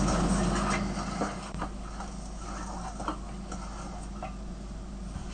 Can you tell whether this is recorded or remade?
recorded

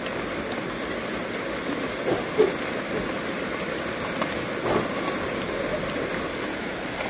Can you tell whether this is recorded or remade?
recorded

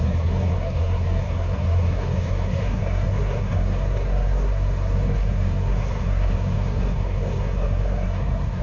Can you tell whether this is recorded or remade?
remade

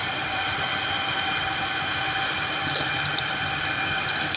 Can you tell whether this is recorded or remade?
recorded